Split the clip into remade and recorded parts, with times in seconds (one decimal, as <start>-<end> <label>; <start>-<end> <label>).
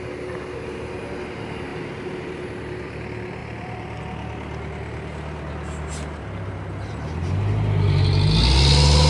0.0-1.7 recorded; 1.7-2.5 remade; 2.5-3.4 recorded; 3.4-4.0 remade; 4.0-9.1 recorded